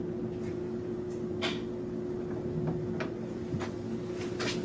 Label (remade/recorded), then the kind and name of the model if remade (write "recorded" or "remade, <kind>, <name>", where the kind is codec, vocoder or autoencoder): recorded